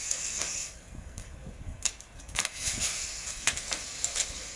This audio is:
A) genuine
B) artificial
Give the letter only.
B